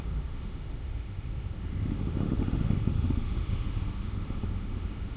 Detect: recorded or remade remade